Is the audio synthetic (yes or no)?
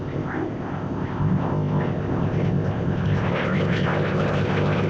yes